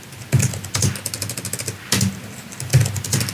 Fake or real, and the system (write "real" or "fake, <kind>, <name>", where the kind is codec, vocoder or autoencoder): real